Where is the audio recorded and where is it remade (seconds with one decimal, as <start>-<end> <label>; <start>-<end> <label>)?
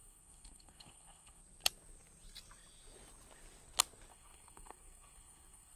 0.0-1.4 remade; 1.4-4.1 recorded; 4.1-5.8 remade